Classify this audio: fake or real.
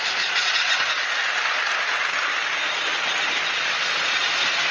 real